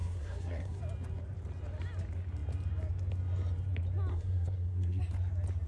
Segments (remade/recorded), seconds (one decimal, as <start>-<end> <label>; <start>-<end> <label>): 0.0-0.8 remade; 0.8-4.1 recorded; 4.1-5.0 remade; 5.0-5.7 recorded